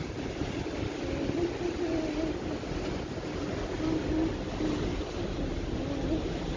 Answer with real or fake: fake